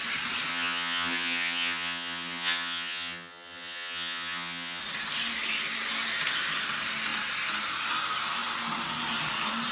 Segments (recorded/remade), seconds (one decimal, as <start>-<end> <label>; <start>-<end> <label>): 0.0-0.5 recorded; 0.5-4.8 remade; 4.8-9.7 recorded